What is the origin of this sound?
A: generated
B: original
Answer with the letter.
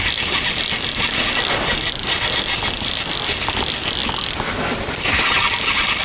B